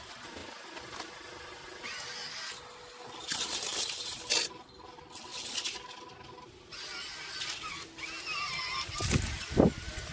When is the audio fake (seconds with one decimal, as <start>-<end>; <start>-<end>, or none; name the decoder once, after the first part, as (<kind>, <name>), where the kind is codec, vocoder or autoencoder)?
none